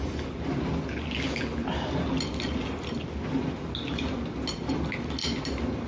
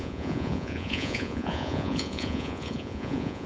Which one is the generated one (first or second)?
second